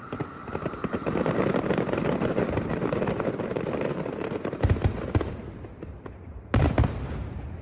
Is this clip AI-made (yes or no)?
yes